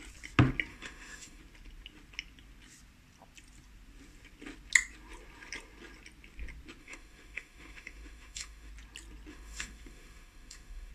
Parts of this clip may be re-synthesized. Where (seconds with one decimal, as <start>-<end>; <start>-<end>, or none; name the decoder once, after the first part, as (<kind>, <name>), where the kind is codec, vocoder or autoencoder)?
0.7-1.4 (autoencoder, DAC-VAE); 6.8-8.7; 9.3-10.9

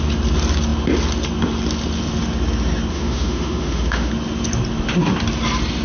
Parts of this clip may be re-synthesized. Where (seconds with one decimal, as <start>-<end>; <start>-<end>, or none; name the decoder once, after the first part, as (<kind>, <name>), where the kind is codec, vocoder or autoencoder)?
2.9-4.1 (autoencoder, DAC-VAE)

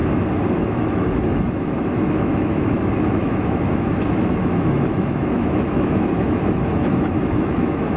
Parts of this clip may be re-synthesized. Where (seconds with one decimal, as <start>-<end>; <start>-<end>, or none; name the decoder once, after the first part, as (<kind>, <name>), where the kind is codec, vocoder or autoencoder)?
0.6-8.0 (autoencoder, DAC-VAE)

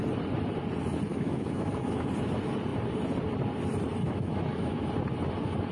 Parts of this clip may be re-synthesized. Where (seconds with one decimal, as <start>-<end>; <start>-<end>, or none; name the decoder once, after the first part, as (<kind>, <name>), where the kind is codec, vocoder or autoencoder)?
1.1-2.1 (autoencoder, DAC-VAE); 4.0-4.8

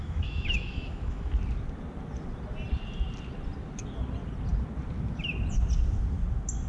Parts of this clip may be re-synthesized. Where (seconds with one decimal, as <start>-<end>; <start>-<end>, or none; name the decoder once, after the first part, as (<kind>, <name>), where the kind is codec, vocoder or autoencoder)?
0.0-1.3 (autoencoder, DAC-VAE)

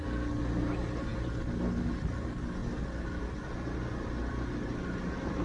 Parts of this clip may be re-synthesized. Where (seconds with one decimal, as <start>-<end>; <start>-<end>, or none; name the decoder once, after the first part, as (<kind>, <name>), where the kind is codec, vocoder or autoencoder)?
none

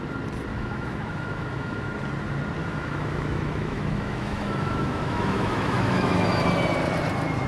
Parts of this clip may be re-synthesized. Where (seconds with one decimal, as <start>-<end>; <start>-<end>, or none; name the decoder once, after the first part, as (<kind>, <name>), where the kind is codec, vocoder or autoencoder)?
0.5-1.9 (autoencoder, DAC-VAE); 2.6-6.3

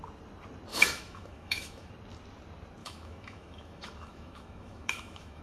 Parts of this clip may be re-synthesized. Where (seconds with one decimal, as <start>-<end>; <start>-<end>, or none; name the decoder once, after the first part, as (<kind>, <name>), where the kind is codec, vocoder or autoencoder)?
0.7-1.9 (autoencoder, DAC-VAE); 2.8-5.4